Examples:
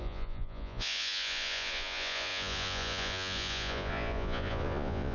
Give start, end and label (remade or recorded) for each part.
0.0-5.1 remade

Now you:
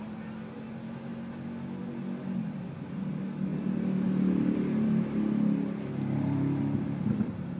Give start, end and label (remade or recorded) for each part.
0.0-7.6 recorded

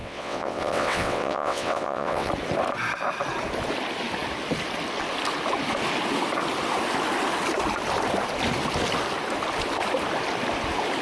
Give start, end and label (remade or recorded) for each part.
0.0-2.3 remade; 2.3-11.0 recorded